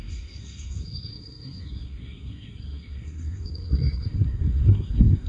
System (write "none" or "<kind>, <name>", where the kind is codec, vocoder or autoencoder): codec, SNAC